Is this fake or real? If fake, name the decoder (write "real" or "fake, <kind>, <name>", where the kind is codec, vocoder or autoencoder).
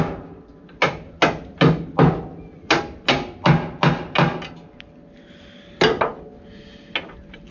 real